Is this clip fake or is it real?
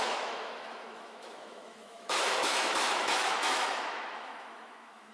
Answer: fake